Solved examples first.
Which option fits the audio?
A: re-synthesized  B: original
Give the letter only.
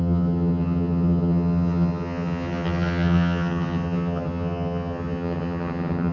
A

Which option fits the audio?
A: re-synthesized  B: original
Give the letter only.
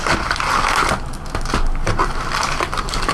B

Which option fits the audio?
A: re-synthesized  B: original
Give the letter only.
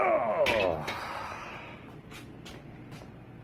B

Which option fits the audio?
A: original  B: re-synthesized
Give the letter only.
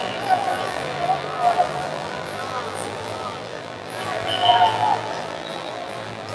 B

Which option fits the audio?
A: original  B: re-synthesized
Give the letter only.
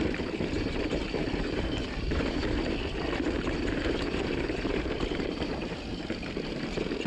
B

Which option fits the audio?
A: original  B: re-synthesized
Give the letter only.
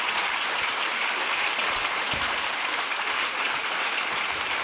B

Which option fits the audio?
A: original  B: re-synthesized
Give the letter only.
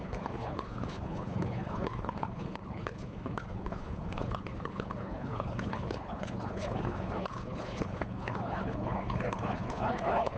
B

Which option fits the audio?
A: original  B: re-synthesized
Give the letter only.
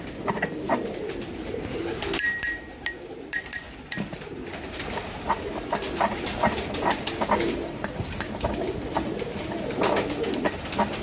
A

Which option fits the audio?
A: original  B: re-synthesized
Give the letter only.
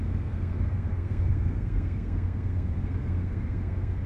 B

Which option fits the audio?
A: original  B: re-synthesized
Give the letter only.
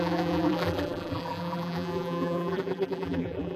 B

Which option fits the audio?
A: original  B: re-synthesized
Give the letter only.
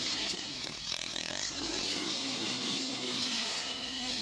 B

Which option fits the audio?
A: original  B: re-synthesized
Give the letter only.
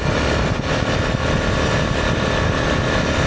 A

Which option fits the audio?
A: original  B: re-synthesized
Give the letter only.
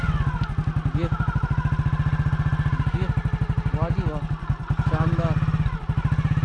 A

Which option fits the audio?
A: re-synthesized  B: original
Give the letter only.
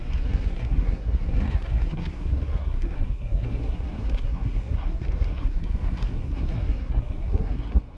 A